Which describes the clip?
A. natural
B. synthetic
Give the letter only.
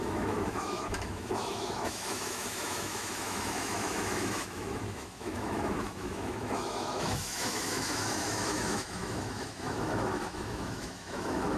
B